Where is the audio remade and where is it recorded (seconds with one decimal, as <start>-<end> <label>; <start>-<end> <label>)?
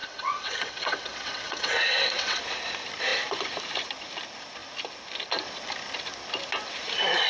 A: 0.0-2.4 remade; 2.4-7.3 recorded